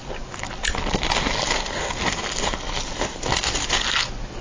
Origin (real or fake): real